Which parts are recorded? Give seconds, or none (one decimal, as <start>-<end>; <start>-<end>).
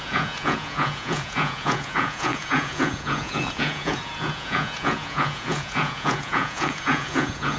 none